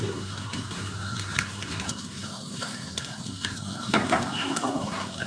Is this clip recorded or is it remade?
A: remade